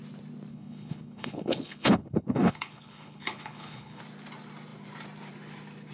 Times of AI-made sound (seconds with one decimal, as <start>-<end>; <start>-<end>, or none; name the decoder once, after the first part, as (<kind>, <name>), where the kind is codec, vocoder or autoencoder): 0.5-4.0 (codec, HILCodec)

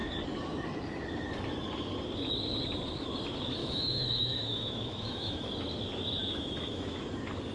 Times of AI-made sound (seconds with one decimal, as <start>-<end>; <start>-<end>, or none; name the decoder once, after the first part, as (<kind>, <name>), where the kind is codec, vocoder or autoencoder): 3.6-5.4 (autoencoder, DAC-VAE); 6.2-7.0

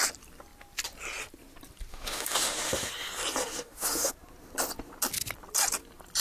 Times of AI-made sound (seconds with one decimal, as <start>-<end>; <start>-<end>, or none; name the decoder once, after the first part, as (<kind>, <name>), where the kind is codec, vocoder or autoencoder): 1.9-2.9 (autoencoder, DAC-VAE); 3.4-4.1

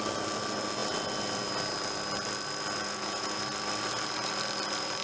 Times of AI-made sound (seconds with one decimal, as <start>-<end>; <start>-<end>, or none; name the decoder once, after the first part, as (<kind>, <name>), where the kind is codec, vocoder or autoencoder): 2.8-3.4 (vocoder, Vocos)